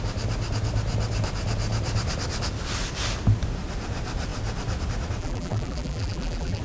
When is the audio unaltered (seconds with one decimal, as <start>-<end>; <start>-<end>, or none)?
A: 0.0-5.2